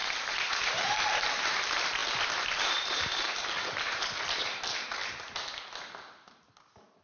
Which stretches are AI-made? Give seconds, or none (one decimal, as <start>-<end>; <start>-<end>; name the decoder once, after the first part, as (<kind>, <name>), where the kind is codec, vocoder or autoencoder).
0.0-1.6 (vocoder, BigVGAN v2); 2.0-4.6